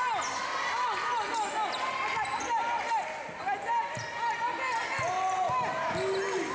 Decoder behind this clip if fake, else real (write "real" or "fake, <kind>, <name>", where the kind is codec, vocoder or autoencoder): real